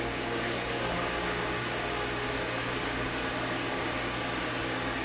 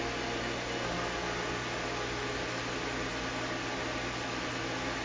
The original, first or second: second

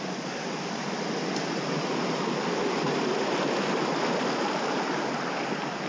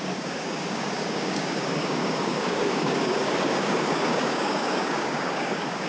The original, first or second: first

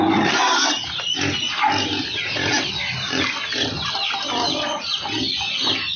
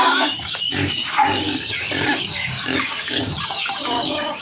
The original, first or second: first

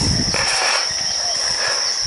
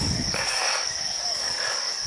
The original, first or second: first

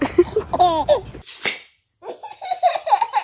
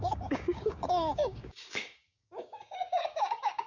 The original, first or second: first